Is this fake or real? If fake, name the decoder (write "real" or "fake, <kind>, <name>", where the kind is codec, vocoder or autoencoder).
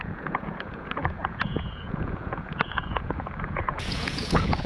fake, vocoder, Vocos